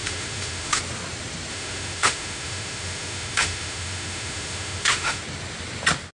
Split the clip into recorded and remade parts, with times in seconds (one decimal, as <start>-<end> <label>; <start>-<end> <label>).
0.0-0.8 remade; 0.8-1.5 recorded; 1.5-5.2 remade; 5.2-6.2 recorded